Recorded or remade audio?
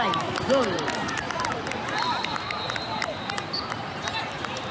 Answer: recorded